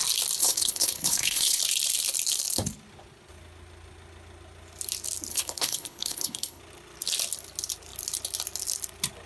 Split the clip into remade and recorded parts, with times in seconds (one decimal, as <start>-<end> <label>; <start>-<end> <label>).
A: 0.0-0.4 recorded; 0.4-1.6 remade; 1.6-5.3 recorded; 5.3-6.6 remade; 6.6-9.3 recorded